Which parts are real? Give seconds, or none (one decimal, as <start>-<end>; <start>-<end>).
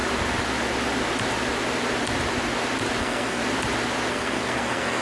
0.0-3.0; 3.4-4.1